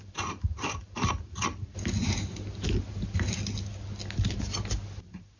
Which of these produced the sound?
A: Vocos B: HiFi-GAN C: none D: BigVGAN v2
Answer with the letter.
C